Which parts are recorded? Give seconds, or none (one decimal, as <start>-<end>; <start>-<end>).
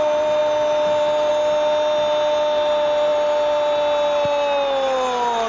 0.0-5.5